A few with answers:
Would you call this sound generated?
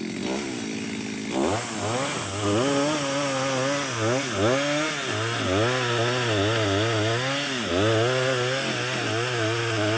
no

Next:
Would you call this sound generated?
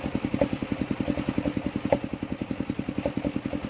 no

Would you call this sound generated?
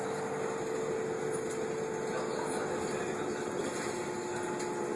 no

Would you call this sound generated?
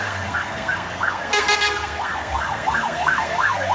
yes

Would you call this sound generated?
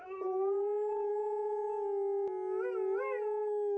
no